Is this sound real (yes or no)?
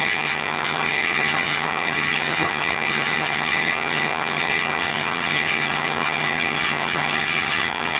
no